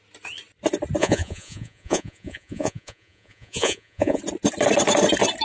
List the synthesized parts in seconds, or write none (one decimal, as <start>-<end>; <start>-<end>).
1.0-4.2